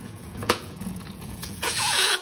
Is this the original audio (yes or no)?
no